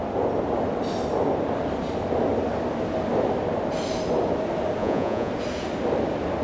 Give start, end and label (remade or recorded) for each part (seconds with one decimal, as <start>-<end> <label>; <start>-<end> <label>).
0.0-4.8 recorded; 4.8-5.3 remade; 5.3-6.4 recorded